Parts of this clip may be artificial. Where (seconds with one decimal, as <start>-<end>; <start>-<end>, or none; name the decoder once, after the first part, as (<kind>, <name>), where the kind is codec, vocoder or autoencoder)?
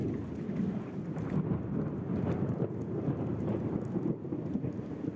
none